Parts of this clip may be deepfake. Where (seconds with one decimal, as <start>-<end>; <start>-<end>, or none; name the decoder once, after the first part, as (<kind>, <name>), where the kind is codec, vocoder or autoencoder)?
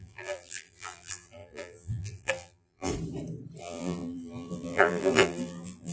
0.0-2.9 (vocoder, BigVGAN v2); 3.6-5.9